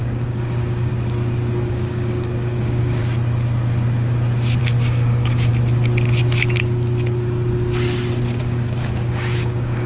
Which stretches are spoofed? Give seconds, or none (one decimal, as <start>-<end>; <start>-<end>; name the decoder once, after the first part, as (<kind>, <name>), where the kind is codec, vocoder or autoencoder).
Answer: 0.0-0.9 (codec, DAC); 1.7-3.0; 4.6-5.5; 8.4-9.9

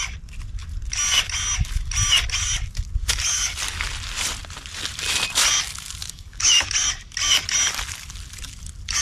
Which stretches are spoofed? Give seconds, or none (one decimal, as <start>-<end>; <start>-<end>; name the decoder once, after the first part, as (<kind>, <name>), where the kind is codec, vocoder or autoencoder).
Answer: 6.0-6.7 (codec, DAC)

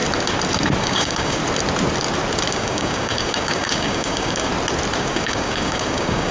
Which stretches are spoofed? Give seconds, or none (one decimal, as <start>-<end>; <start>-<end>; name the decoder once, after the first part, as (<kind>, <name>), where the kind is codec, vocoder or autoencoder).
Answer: 0.8-1.4 (codec, DAC); 2.5-4.5; 5.0-6.3

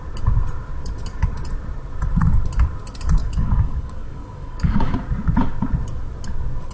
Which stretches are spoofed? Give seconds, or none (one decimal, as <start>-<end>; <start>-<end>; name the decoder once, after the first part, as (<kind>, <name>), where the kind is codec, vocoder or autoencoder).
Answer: 3.2-4.9 (codec, DAC)

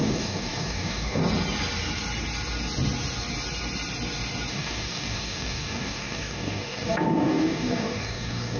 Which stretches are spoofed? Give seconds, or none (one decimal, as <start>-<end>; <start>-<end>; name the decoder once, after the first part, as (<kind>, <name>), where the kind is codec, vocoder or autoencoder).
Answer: 0.0-1.2 (codec, DAC); 4.5-8.6

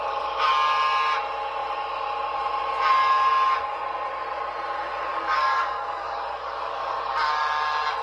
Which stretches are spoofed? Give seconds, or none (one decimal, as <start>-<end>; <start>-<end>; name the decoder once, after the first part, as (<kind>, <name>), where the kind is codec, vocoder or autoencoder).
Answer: 5.1-7.4 (codec, DAC)

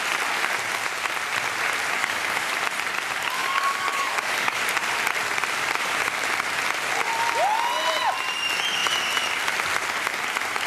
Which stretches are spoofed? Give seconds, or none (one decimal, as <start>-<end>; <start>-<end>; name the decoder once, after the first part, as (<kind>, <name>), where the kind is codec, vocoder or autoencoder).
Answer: 2.0-2.5 (codec, DAC); 3.4-4.6